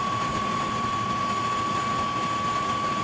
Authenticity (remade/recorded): recorded